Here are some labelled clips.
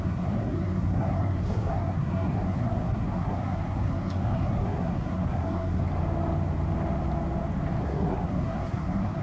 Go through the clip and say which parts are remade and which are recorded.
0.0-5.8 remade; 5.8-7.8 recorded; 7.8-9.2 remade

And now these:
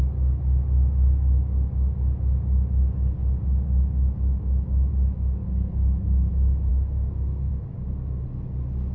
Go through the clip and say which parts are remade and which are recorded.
0.0-6.7 recorded; 6.7-7.5 remade; 7.5-8.9 recorded